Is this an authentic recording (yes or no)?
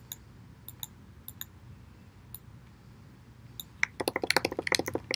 yes